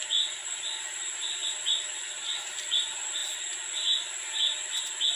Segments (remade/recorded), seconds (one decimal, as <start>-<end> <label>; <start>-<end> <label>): 0.0-5.2 recorded